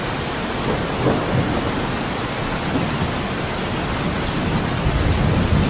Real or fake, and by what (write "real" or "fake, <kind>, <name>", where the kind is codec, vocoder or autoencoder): real